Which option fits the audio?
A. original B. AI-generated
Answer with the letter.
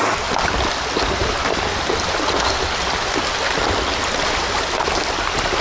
A